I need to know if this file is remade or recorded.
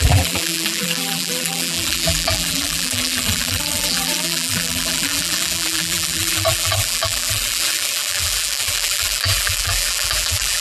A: remade